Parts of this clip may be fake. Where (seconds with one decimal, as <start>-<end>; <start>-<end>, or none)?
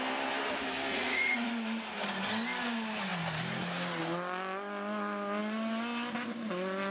0.9-1.5